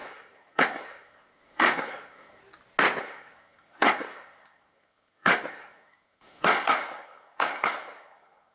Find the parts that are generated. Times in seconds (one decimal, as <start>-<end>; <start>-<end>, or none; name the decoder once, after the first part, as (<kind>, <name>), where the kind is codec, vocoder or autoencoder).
0.0-2.4 (codec, SNAC); 3.0-8.5